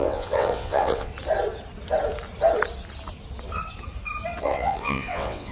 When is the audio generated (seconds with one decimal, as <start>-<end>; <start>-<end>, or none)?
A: 0.0-1.1; 4.4-5.5